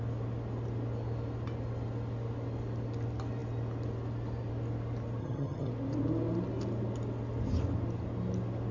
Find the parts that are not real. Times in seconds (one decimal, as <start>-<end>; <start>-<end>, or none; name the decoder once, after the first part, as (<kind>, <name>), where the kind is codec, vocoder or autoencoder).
5.2-5.7 (vocoder, HiFi-GAN)